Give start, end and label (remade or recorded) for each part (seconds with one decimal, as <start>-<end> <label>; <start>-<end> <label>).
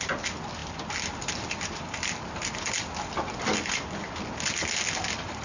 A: 0.0-5.4 recorded